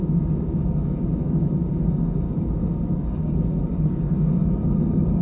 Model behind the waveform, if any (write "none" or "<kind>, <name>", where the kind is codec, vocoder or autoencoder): codec, DAC